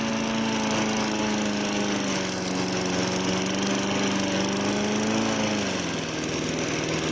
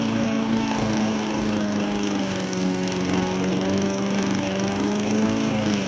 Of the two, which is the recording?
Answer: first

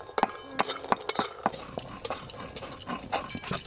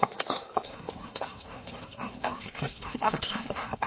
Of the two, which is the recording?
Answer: first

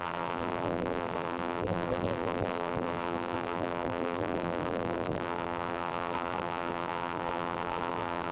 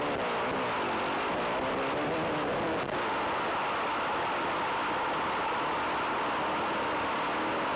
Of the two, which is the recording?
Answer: second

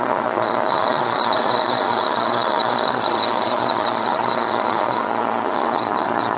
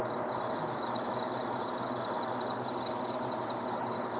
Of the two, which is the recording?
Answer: second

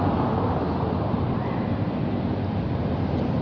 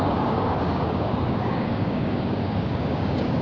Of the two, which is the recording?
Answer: first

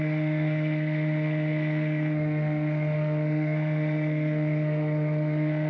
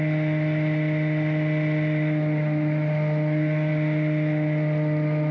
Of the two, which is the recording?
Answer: second